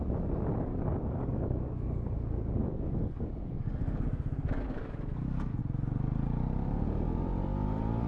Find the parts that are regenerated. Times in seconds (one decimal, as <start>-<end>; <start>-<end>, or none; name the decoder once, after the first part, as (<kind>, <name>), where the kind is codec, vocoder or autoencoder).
0.7-5.6 (codec, DAC)